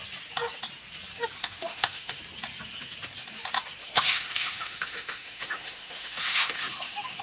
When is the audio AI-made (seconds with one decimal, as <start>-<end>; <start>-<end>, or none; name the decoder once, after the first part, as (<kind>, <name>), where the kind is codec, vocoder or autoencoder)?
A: 1.4-2.2 (autoencoder, DAC-VAE); 3.8-7.2

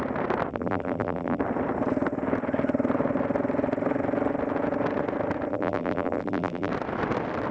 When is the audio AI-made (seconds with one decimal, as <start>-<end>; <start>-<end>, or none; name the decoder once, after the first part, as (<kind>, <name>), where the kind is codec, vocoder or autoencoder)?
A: 0.5-1.4 (vocoder, BigVGAN v2); 5.5-6.7

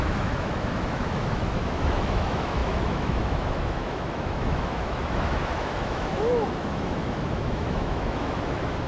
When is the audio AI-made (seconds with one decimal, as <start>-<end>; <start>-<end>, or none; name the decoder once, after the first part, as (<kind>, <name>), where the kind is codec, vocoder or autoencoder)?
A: 0.0-8.9 (autoencoder, DAC-VAE)

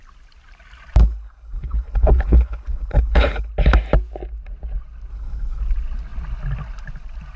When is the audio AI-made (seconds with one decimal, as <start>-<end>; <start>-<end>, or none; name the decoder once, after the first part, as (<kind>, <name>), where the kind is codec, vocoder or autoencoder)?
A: 1.0-3.5 (codec, HILCodec); 5.1-5.6

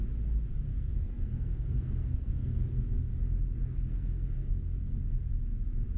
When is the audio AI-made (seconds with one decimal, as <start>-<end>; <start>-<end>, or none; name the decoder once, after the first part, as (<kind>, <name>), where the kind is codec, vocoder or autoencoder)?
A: 0.7-3.1 (codec, SNAC); 3.6-5.3